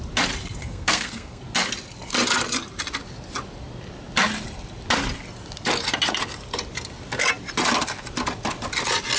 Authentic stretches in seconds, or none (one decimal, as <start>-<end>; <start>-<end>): 0.0-0.6; 1.4-9.2